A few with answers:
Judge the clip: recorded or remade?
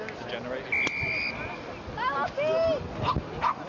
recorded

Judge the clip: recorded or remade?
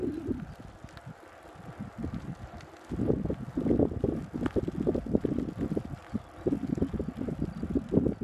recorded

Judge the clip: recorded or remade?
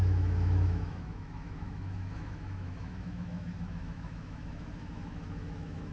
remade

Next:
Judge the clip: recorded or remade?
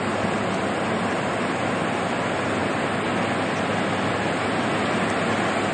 recorded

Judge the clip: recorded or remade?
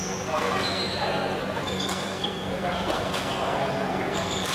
remade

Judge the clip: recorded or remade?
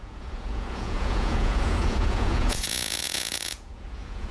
remade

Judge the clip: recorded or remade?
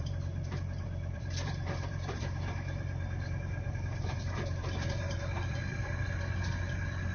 remade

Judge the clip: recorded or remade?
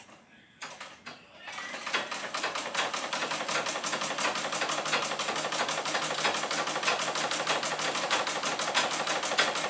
recorded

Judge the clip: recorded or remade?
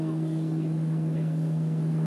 remade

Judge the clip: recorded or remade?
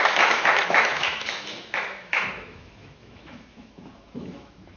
remade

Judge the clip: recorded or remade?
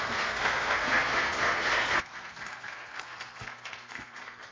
remade